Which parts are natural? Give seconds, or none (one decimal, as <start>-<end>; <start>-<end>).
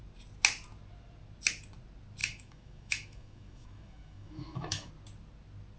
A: 0.0-2.2; 4.9-5.8